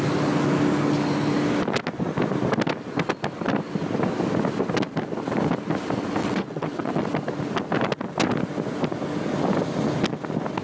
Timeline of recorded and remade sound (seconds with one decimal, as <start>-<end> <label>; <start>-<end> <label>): 0.0-6.2 recorded; 6.2-7.1 remade; 7.1-10.6 recorded